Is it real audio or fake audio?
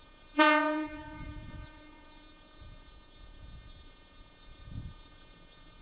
fake